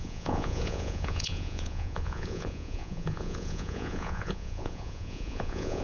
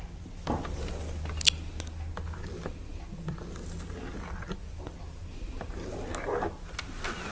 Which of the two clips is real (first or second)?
second